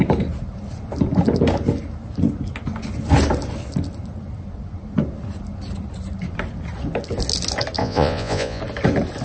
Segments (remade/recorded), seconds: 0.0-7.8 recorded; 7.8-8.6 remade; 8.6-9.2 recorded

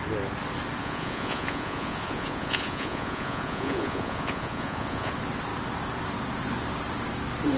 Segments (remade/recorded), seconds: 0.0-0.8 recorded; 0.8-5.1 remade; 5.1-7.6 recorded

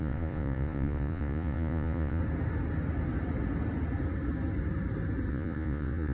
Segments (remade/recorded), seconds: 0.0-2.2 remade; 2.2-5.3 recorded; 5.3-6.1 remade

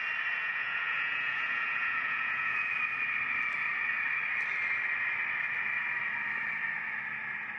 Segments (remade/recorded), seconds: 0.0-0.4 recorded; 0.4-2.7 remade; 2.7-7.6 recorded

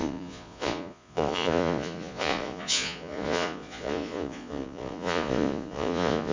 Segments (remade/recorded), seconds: 0.0-6.3 remade

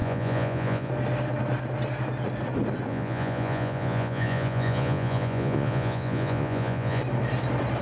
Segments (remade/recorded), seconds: 0.0-0.9 remade; 0.9-2.9 recorded; 2.9-7.0 remade; 7.0-7.8 recorded

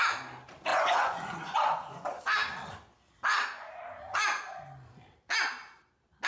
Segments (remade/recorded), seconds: 0.0-0.7 recorded; 0.7-2.2 remade; 2.2-6.3 recorded